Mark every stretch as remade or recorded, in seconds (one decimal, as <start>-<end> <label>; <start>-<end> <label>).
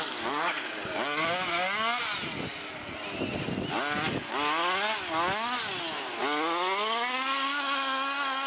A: 0.0-8.5 recorded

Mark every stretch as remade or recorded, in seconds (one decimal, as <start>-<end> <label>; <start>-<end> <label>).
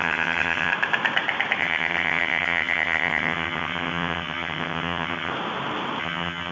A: 0.0-0.7 remade; 0.7-1.6 recorded; 1.6-5.3 remade; 5.3-6.0 recorded; 6.0-6.5 remade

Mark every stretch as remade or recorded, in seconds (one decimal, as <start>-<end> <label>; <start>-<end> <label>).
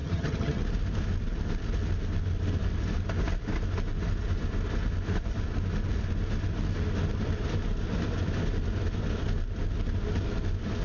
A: 0.0-0.6 remade; 0.6-10.8 recorded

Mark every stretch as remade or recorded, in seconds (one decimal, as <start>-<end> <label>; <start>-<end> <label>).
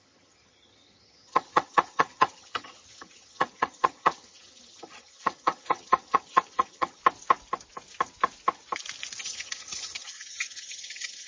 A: 0.0-7.0 remade; 7.0-9.2 recorded; 9.2-11.3 remade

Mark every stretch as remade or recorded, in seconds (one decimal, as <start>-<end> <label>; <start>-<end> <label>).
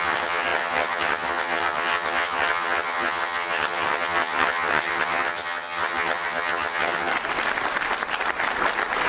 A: 0.0-7.1 remade; 7.1-9.1 recorded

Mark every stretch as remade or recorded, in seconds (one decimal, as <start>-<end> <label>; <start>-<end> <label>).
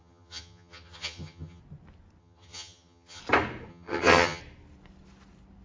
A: 0.0-1.6 remade; 1.6-2.2 recorded; 2.2-3.2 remade; 3.2-3.7 recorded; 3.7-4.4 remade; 4.4-5.6 recorded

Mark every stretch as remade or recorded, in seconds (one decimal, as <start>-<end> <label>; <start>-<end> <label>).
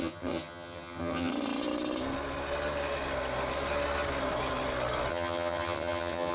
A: 0.0-1.3 remade; 1.3-5.1 recorded; 5.1-6.3 remade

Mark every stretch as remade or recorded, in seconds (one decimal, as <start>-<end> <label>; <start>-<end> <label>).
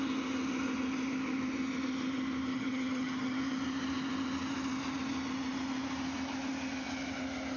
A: 0.0-2.5 recorded; 2.5-3.4 remade; 3.4-7.6 recorded